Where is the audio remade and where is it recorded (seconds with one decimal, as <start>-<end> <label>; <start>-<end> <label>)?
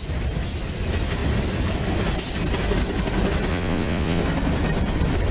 0.0-3.5 recorded; 3.5-4.2 remade; 4.2-5.3 recorded